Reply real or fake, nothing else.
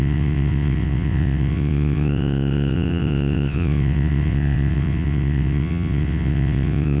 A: fake